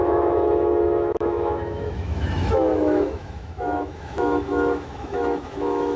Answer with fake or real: fake